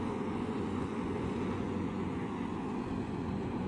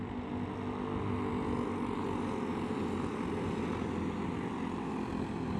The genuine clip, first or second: second